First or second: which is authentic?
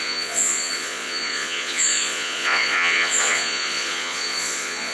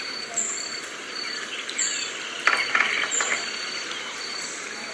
second